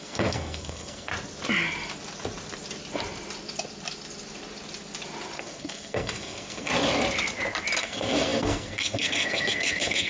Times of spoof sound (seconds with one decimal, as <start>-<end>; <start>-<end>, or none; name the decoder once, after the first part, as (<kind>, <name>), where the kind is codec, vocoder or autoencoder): 0.0-1.1 (codec, SNAC); 5.4-6.7; 7.8-10.1